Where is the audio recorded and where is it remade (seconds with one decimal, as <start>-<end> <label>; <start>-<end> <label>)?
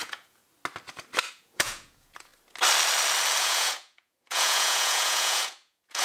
0.0-0.4 remade; 0.4-1.3 recorded; 1.3-2.3 remade; 2.3-3.4 recorded; 3.4-6.0 remade